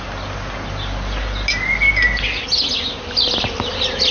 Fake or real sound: real